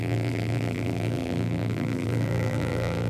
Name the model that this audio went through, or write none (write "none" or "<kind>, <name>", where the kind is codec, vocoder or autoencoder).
vocoder, BigVGAN v2